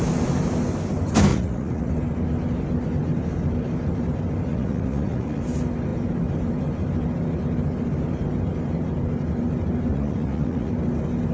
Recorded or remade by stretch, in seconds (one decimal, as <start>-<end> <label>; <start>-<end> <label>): 0.0-1.3 recorded; 1.3-1.9 remade; 1.9-4.5 recorded; 4.5-5.4 remade; 5.4-9.9 recorded; 9.9-10.7 remade; 10.7-11.3 recorded